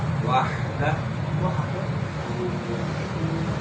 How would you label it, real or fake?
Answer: real